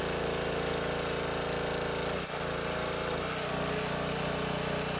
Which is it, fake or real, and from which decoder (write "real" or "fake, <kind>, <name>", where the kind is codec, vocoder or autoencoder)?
real